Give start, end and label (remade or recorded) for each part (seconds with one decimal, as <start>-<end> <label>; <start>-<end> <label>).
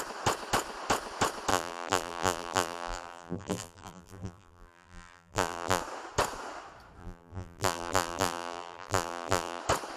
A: 0.0-1.5 recorded; 1.5-5.8 remade; 5.8-7.0 recorded; 7.0-9.6 remade; 9.6-10.0 recorded